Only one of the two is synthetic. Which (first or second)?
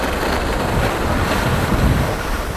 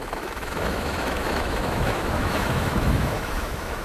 second